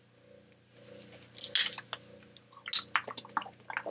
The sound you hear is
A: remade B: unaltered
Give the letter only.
B